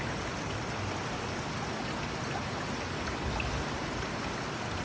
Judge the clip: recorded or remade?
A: recorded